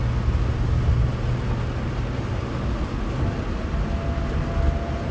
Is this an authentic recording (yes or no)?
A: yes